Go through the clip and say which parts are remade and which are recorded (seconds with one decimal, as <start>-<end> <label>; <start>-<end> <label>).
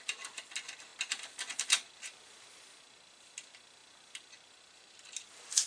0.0-5.7 recorded